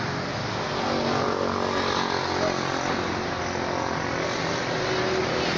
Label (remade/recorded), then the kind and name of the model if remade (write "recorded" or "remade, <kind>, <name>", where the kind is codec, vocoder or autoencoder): recorded